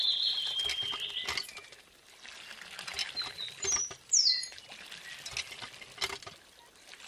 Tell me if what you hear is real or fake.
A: real